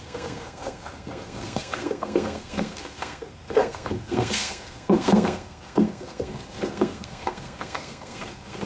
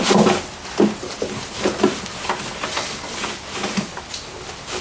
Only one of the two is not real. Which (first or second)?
first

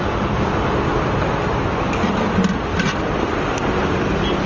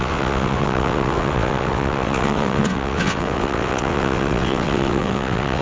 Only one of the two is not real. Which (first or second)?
second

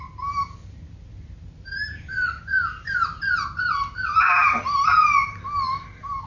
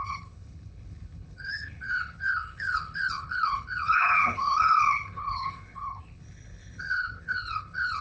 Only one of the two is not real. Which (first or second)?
second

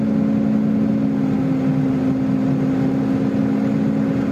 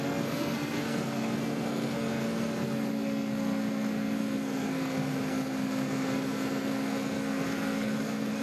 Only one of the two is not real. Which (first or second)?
second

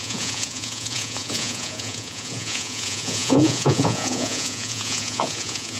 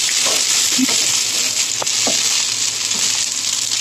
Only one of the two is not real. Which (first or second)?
first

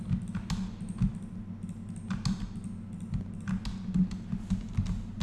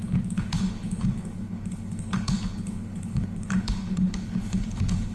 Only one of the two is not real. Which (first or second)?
second